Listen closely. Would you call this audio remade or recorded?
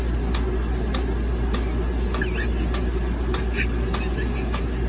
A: recorded